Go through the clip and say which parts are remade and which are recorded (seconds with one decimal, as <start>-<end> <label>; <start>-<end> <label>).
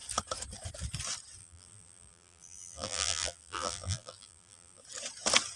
0.0-1.4 recorded; 1.4-4.8 remade; 4.8-5.6 recorded